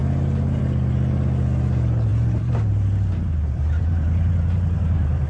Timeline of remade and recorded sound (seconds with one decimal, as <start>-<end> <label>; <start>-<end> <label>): 0.0-2.1 recorded; 2.1-5.3 remade